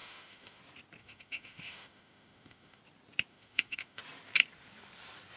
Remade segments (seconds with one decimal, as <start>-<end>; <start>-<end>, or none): 0.0-0.6; 1.0-2.8; 3.3-4.0